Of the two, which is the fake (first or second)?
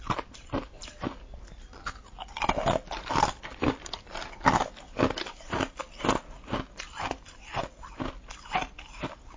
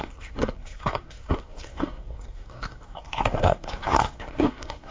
second